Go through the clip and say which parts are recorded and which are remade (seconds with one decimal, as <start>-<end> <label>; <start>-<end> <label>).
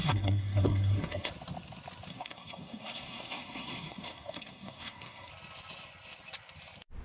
0.0-1.3 remade; 1.3-2.1 recorded; 2.1-5.3 remade; 5.3-7.0 recorded